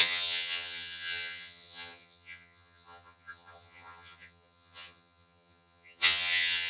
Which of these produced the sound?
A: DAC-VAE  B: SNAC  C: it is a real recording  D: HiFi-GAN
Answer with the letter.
D